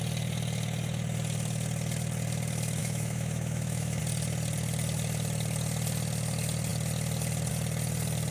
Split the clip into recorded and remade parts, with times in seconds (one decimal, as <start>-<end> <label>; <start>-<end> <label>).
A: 0.0-2.8 recorded; 2.8-4.0 remade; 4.0-8.3 recorded